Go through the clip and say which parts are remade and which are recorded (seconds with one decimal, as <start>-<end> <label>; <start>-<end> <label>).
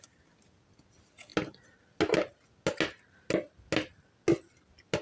0.0-5.0 recorded